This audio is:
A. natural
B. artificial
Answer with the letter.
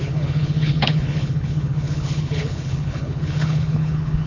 B